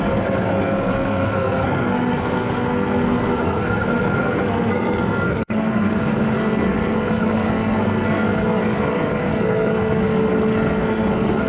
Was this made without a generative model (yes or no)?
no